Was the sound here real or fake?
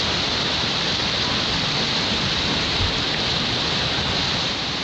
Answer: real